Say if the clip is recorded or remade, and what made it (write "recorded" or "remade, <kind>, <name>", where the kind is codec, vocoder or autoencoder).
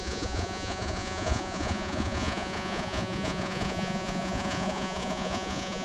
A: remade, vocoder, Vocos